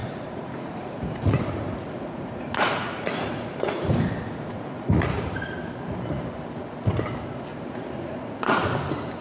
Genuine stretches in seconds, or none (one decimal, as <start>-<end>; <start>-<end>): 5.2-7.5; 8.7-9.2